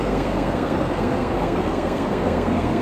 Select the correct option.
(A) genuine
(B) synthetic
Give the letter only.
B